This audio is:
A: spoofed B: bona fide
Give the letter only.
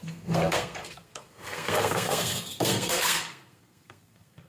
A